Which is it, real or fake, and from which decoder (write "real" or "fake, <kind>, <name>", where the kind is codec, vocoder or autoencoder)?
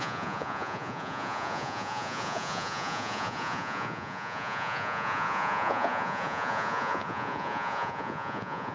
fake, vocoder, Vocos